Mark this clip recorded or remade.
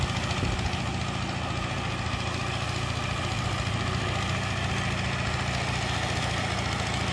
recorded